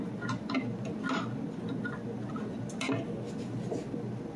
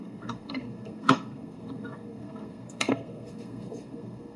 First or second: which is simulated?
second